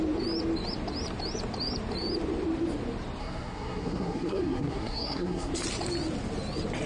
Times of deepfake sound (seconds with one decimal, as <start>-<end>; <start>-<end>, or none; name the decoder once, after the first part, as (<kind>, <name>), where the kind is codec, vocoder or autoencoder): 3.2-5.5 (codec, SNAC)